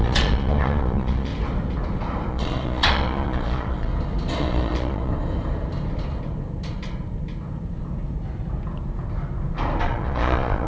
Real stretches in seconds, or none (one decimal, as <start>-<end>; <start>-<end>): 1.3-2.3; 3.9-4.4; 5.1-9.8